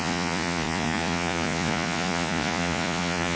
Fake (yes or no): yes